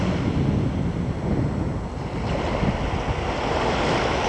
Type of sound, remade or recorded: recorded